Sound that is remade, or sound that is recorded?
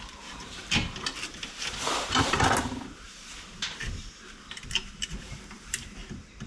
remade